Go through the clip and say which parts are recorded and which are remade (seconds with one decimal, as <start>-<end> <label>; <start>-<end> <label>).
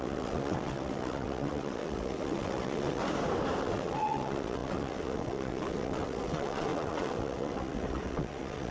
0.0-3.0 remade; 3.0-3.6 recorded; 3.6-8.7 remade